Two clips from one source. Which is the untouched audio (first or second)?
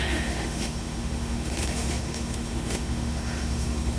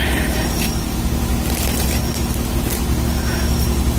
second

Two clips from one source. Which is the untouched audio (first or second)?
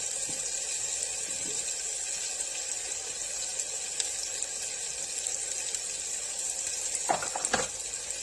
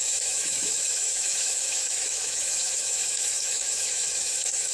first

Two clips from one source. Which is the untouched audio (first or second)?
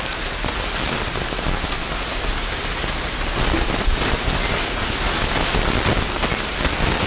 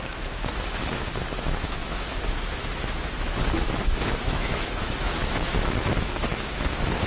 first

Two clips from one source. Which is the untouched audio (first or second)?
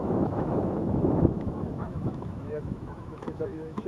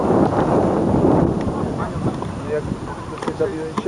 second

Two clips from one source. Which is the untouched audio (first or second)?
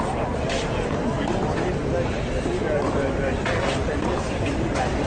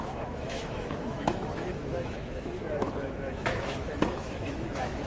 first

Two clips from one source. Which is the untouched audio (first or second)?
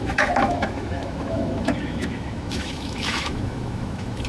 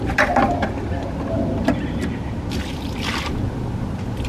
second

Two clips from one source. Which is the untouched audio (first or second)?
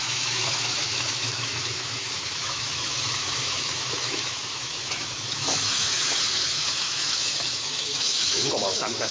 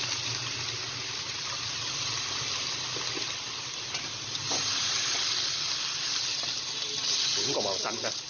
second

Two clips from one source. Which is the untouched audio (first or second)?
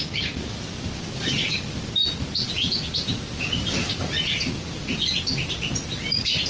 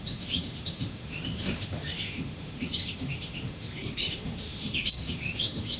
first